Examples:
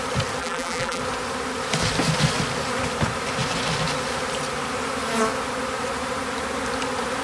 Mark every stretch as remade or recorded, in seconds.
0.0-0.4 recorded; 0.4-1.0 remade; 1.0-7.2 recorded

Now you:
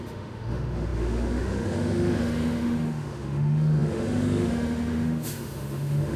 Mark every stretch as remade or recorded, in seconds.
0.0-6.2 remade

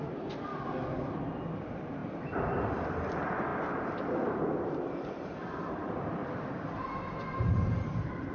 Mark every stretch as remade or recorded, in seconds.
0.0-0.5 remade; 0.5-1.6 recorded; 1.6-3.5 remade; 3.5-4.3 recorded; 4.3-6.2 remade; 6.2-7.7 recorded; 7.7-8.3 remade